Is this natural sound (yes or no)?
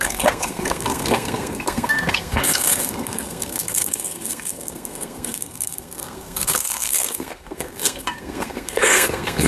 no